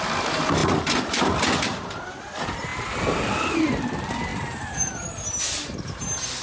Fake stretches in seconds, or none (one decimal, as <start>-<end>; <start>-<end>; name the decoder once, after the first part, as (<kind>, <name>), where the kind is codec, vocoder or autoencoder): none